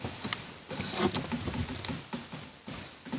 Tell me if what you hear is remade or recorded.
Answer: recorded